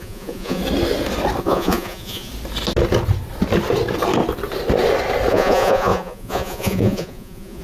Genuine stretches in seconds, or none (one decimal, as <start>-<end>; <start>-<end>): 0.6-1.4; 2.3-5.3